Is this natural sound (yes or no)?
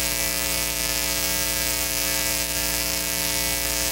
no